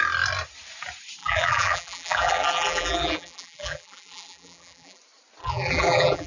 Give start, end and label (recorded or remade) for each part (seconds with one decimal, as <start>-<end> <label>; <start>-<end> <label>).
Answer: 0.0-1.2 recorded; 1.2-5.0 remade; 5.0-5.4 recorded; 5.4-6.3 remade